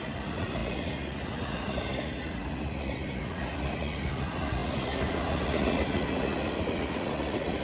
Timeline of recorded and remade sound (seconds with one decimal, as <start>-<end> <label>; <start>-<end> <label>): 0.0-7.6 remade